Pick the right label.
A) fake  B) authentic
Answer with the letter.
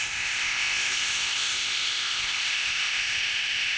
A